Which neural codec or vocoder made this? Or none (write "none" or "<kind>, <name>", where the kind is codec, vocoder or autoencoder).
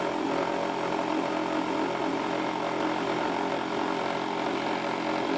none